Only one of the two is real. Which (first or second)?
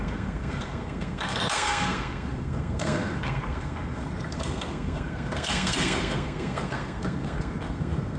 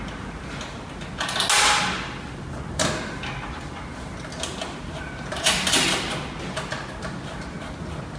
second